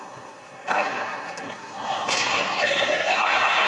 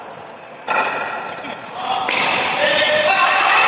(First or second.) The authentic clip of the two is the second